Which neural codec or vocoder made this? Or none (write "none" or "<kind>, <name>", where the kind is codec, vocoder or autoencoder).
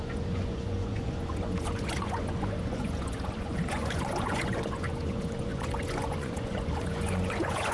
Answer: vocoder, Vocos